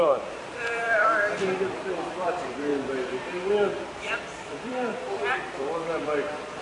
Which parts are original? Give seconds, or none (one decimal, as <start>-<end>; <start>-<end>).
2.7-3.5